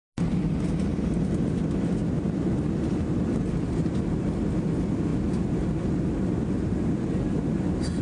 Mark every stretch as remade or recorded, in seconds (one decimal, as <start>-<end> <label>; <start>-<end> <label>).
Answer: 0.0-8.0 recorded